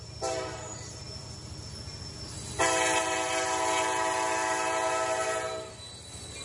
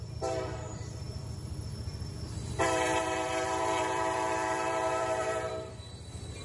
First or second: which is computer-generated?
second